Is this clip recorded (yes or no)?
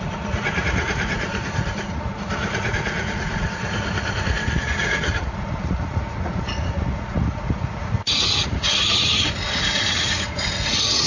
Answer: no